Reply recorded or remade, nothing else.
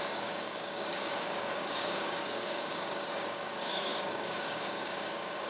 remade